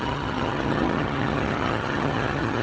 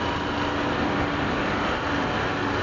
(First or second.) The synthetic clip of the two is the first